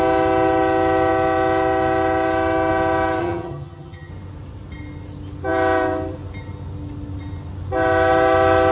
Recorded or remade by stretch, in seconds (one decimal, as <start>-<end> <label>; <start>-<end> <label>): 0.0-3.2 recorded; 3.2-4.1 remade; 4.1-8.7 recorded